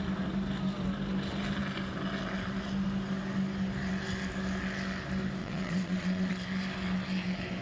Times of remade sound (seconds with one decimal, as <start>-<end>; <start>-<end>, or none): 5.4-6.3